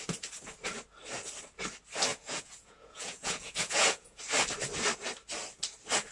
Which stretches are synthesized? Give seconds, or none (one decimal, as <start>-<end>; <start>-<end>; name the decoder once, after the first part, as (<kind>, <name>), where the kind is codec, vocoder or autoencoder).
2.1-4.2 (vocoder, Vocos)